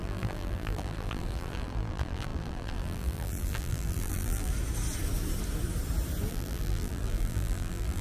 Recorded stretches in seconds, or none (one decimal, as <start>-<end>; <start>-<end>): 4.5-6.3